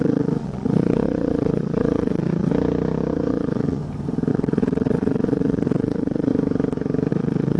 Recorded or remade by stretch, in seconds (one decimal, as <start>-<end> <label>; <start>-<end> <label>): 0.0-2.5 remade; 2.5-3.3 recorded; 3.3-3.8 remade; 3.8-4.3 recorded; 4.3-6.3 remade; 6.3-7.1 recorded; 7.1-7.6 remade